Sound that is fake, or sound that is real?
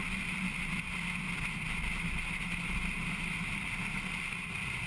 real